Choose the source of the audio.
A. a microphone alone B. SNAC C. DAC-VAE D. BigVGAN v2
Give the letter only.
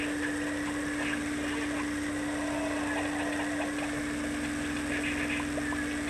A